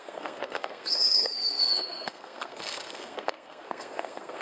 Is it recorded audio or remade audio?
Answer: remade